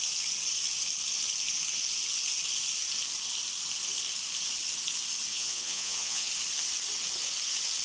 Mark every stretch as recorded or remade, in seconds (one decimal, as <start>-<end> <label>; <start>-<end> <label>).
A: 0.0-5.3 recorded; 5.3-6.3 remade; 6.3-7.8 recorded